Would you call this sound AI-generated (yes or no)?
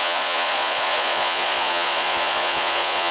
yes